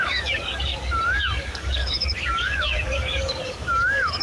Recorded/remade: remade